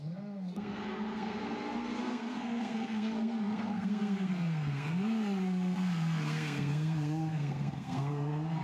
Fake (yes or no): yes